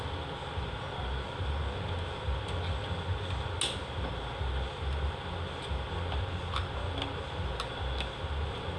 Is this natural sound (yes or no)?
yes